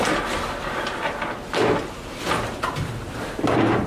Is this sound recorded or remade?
recorded